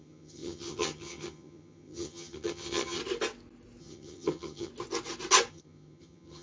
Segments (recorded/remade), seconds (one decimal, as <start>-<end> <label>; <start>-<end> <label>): 0.0-3.0 remade; 3.0-3.8 recorded; 3.8-4.7 remade; 4.7-5.5 recorded; 5.5-6.4 remade